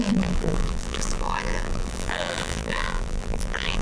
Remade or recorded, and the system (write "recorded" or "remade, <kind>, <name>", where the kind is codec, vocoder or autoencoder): remade, vocoder, BigVGAN v2